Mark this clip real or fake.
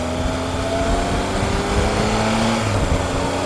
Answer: real